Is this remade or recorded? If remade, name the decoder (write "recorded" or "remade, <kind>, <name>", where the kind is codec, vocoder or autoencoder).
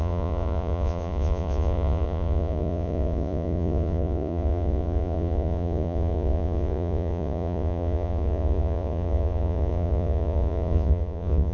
remade, vocoder, Vocos